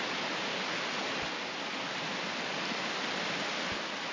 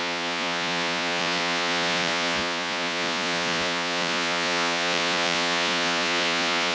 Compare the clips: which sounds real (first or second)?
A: first